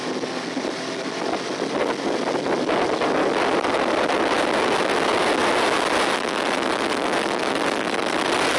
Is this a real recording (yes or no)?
yes